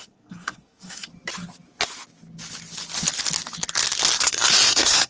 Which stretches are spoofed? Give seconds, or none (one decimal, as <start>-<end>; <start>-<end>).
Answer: 0.0-1.1; 4.2-5.1